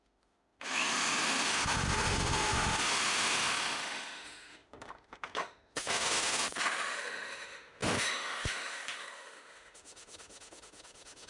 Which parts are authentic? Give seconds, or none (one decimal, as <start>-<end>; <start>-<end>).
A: none